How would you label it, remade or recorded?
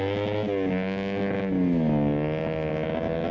recorded